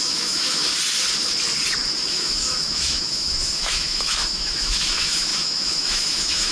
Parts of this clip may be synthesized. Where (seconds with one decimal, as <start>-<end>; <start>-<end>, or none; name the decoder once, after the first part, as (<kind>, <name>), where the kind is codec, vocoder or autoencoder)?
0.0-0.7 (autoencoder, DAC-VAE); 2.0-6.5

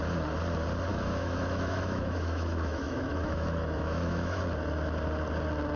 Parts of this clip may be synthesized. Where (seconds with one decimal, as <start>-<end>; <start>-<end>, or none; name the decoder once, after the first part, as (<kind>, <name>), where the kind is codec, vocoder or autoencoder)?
0.9-4.4 (autoencoder, DAC-VAE)

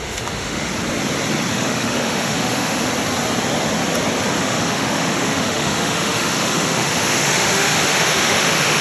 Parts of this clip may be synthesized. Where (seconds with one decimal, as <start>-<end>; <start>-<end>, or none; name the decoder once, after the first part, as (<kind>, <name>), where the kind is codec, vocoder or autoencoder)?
0.0-0.7 (autoencoder, DAC-VAE); 1.5-2.9; 4.4-8.8